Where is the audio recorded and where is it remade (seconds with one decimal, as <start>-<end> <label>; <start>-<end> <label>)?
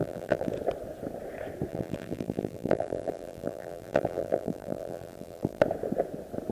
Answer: 0.0-0.5 remade; 0.5-1.7 recorded; 1.7-5.6 remade; 5.6-6.5 recorded